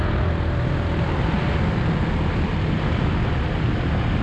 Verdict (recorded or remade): recorded